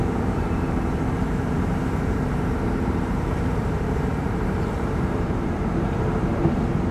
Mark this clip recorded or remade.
remade